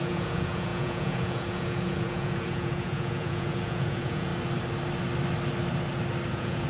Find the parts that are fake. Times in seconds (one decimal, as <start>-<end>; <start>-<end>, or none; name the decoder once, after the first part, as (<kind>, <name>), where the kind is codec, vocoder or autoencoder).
0.0-4.3 (vocoder, Vocos); 6.3-6.7

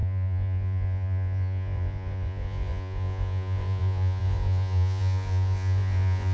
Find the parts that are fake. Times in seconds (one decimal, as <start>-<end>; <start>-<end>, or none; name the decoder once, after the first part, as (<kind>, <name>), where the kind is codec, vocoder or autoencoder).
0.0-6.3 (vocoder, Vocos)

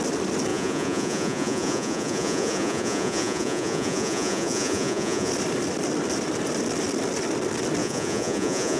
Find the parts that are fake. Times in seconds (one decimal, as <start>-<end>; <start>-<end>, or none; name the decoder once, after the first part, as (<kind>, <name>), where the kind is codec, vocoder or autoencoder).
0.5-5.3 (vocoder, Vocos); 7.8-8.8

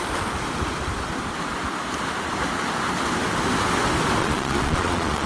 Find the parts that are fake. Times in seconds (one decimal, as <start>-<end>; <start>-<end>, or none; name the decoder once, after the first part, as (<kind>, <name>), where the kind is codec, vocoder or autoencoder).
4.2-5.3 (vocoder, Vocos)

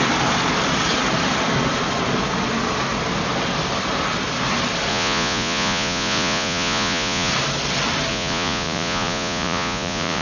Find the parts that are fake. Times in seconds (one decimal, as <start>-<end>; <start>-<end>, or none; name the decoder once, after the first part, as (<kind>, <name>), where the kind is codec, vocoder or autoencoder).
4.9-7.3 (vocoder, Vocos); 8.1-10.2

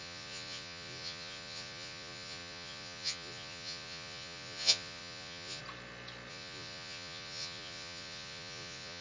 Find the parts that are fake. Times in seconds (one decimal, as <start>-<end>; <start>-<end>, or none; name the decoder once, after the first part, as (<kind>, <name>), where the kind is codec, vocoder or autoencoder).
0.0-5.6 (vocoder, Vocos); 6.3-9.0

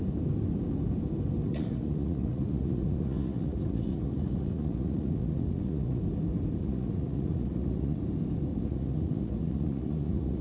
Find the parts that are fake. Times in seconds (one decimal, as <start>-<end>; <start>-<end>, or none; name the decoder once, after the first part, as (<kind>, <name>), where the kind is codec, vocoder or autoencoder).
1.4-6.0 (vocoder, Vocos); 6.6-8.0; 8.5-10.4